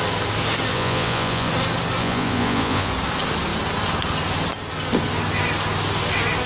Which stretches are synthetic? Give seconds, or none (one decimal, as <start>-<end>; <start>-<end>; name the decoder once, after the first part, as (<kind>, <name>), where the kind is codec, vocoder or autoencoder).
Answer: 0.7-1.5 (vocoder, Vocos); 2.0-2.9